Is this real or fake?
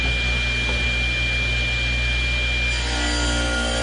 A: real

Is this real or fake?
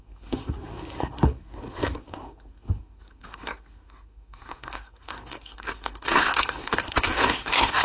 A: fake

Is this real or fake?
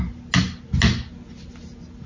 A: real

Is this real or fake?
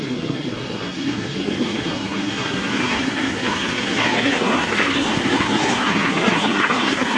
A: fake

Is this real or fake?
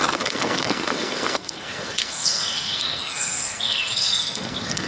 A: fake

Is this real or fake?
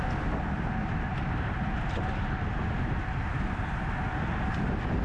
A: real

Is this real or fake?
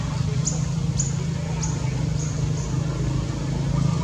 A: real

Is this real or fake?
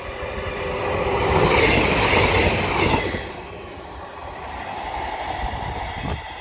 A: real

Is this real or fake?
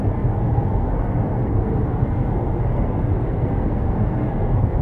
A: fake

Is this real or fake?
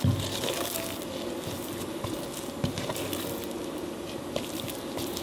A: real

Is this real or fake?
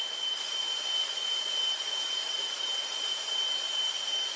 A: real